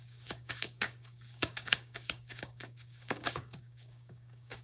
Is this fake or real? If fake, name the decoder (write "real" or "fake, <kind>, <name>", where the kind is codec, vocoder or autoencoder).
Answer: fake, codec, DAC